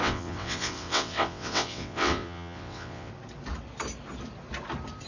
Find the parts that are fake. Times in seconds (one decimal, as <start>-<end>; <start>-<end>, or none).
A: 0.0-3.1

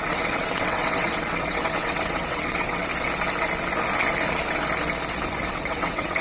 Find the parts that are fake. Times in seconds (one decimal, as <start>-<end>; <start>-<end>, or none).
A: 0.0-2.9; 5.5-6.2

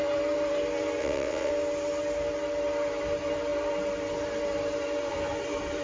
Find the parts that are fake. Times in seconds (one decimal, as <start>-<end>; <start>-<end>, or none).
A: 1.0-1.5

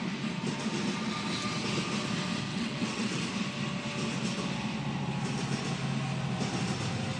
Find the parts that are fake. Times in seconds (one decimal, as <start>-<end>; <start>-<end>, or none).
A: 2.5-3.2